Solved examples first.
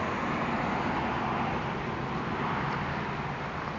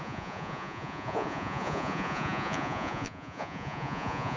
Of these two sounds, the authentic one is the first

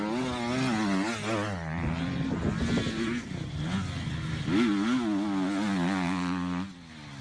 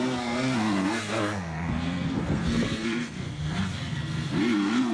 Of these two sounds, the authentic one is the first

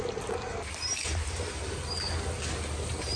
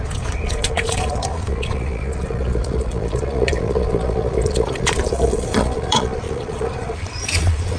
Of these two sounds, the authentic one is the first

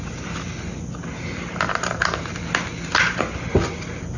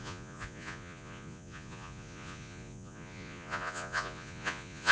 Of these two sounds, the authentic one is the first